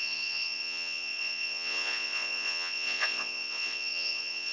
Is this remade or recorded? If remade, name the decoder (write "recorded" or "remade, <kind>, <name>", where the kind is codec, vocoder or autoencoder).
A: remade, vocoder, Vocos